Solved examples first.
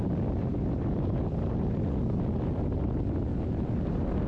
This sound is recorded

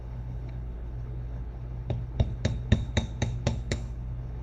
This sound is remade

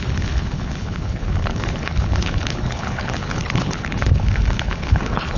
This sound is remade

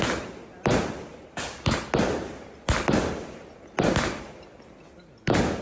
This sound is recorded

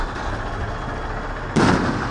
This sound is recorded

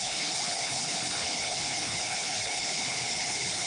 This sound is remade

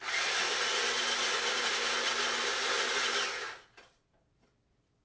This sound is recorded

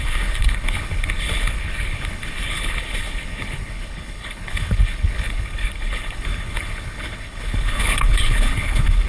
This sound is remade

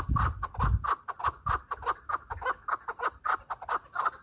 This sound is recorded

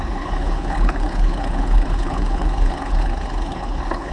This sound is remade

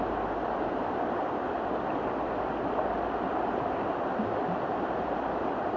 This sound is recorded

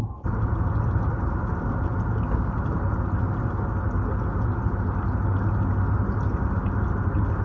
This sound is recorded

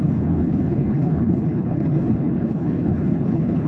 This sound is remade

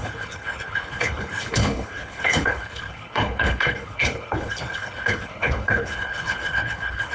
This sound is remade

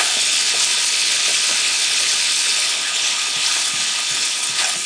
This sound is remade